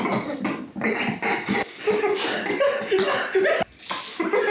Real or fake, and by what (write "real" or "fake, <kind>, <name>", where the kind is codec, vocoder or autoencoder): real